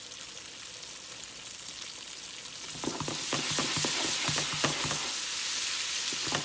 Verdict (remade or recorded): recorded